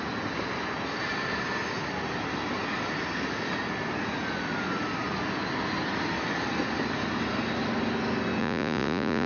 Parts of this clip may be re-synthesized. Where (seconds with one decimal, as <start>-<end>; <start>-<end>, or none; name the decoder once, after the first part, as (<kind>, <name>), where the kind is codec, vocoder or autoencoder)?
8.4-9.3 (vocoder, Vocos)